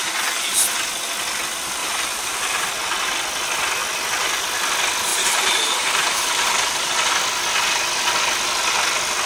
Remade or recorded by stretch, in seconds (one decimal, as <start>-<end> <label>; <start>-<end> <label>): 0.0-1.8 recorded; 1.8-2.7 remade; 2.7-5.1 recorded; 5.1-7.1 remade; 7.1-9.3 recorded